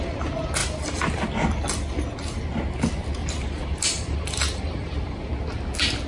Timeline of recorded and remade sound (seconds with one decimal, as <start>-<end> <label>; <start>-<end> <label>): 0.0-0.6 recorded; 0.6-1.2 remade; 1.2-3.2 recorded; 3.2-5.3 remade; 5.3-6.1 recorded